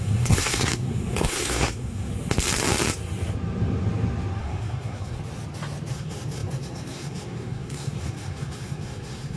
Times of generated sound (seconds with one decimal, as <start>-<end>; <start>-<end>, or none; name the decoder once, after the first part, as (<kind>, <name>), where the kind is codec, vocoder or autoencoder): 0.0-2.1 (codec, SNAC); 4.4-5.2; 5.9-9.4